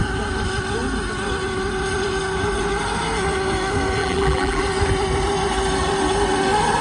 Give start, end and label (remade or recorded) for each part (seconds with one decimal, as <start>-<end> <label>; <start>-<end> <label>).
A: 0.0-4.0 recorded; 4.0-4.6 remade; 4.6-6.8 recorded